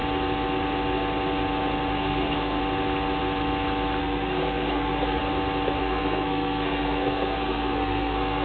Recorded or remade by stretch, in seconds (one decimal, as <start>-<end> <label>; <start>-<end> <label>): 0.0-1.9 recorded; 1.9-2.6 remade; 2.6-4.0 recorded; 4.0-5.2 remade; 5.2-5.8 recorded; 5.8-8.4 remade